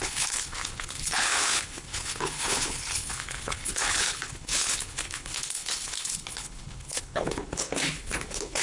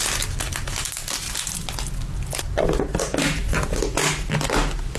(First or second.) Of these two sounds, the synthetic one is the first